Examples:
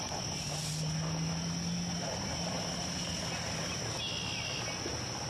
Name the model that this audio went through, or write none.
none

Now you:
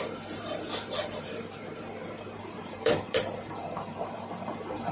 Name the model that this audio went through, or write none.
vocoder, BigVGAN v2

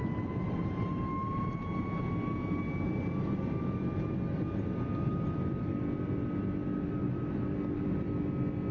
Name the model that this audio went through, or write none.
none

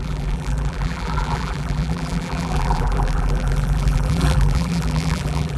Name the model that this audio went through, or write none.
vocoder, BigVGAN v2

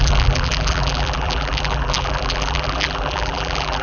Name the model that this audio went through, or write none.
vocoder, BigVGAN v2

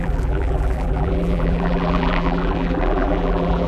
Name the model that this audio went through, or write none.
vocoder, BigVGAN v2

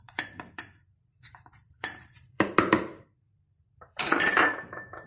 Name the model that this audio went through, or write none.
vocoder, BigVGAN v2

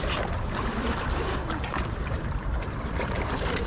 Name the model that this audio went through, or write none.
vocoder, BigVGAN v2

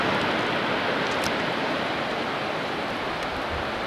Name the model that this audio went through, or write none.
none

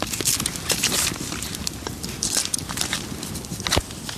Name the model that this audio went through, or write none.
none